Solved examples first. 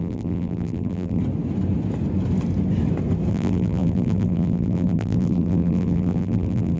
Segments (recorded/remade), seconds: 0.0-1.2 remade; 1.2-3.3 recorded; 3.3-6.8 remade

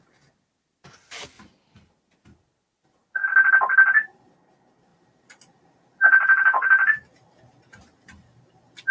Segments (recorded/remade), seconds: 0.0-4.9 recorded; 4.9-8.4 remade; 8.4-8.9 recorded

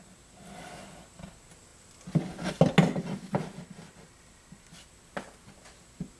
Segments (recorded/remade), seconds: 0.0-6.2 recorded

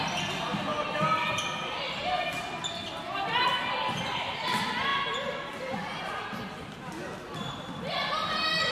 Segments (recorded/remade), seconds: 0.0-8.7 recorded

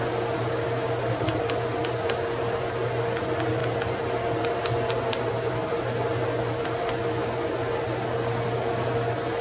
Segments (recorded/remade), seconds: 0.0-9.4 recorded

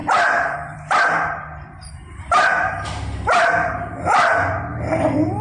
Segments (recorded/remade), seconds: 0.0-1.9 remade; 1.9-4.7 recorded; 4.7-5.4 remade

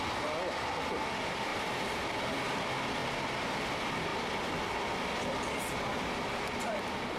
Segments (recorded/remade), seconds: 0.0-1.5 recorded; 1.5-2.1 remade; 2.1-3.0 recorded; 3.0-3.6 remade; 3.6-7.2 recorded